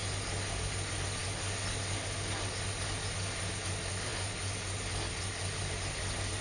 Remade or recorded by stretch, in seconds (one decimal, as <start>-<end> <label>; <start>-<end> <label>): 0.0-6.4 recorded